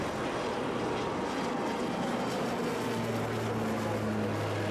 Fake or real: real